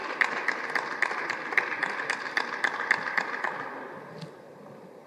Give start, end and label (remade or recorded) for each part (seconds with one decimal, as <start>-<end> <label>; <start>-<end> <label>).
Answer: 0.0-5.1 recorded